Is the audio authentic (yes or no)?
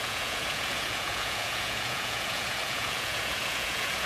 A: no